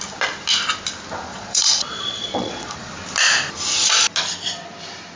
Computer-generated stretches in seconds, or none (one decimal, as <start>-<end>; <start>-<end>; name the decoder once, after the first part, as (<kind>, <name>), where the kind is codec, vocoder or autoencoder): 1.3-2.9 (vocoder, Vocos)